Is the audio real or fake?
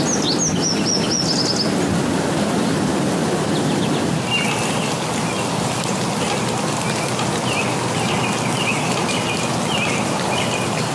real